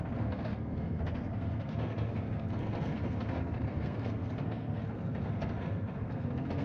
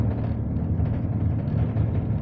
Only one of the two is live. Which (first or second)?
second